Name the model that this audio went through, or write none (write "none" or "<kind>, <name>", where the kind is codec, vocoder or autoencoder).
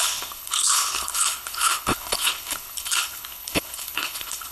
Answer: codec, HILCodec